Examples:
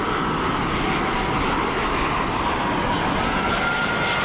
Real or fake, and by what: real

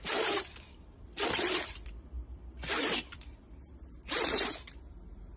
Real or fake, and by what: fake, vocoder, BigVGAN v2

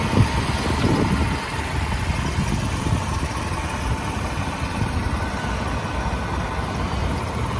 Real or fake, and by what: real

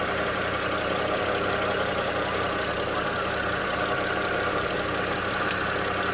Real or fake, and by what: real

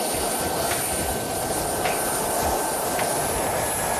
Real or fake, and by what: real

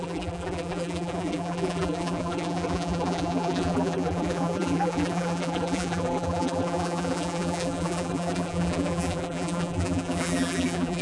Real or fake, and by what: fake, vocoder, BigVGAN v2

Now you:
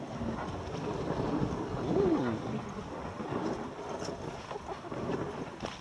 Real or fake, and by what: real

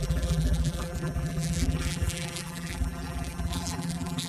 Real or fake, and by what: fake, vocoder, BigVGAN v2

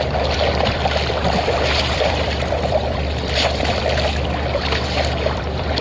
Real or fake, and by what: fake, vocoder, BigVGAN v2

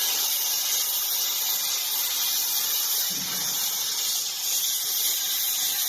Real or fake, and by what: real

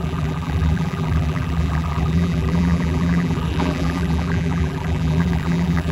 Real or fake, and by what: fake, vocoder, BigVGAN v2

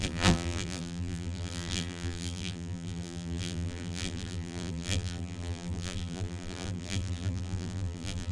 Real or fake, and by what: fake, vocoder, BigVGAN v2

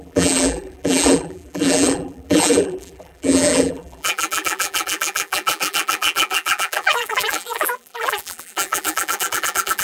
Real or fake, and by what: fake, vocoder, BigVGAN v2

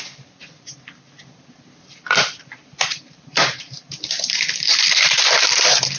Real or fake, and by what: fake, vocoder, BigVGAN v2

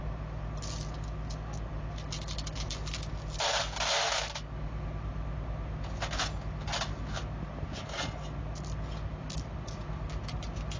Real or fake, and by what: real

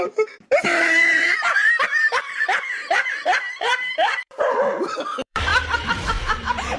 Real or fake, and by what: fake, vocoder, BigVGAN v2